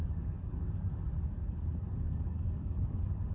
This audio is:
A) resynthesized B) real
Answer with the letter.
A